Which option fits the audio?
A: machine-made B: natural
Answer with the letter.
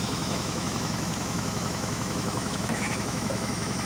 A